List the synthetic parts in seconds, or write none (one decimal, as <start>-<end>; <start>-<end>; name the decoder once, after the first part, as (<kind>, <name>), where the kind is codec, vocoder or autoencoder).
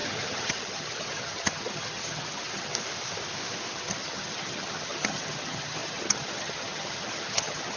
0.0-2.7 (vocoder, HiFi-GAN); 3.7-7.8